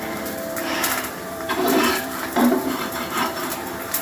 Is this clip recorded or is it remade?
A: remade